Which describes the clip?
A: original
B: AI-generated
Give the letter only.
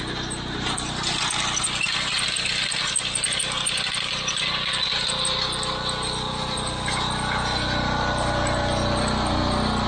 A